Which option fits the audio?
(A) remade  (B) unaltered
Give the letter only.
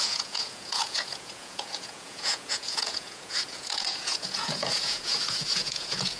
A